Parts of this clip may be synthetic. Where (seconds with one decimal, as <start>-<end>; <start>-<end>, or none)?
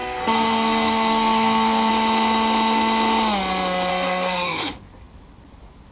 0.0-1.9; 3.9-4.7